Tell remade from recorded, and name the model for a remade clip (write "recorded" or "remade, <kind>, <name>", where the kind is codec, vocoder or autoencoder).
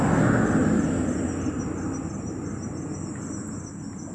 recorded